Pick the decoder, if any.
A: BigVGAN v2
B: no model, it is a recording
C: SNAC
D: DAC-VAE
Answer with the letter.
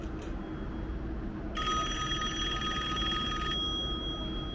B